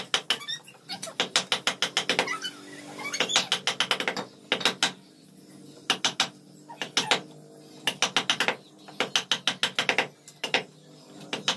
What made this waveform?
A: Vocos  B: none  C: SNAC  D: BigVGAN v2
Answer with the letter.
B